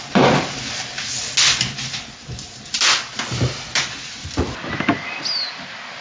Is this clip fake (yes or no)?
no